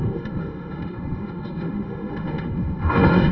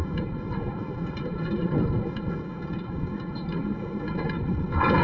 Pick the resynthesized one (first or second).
first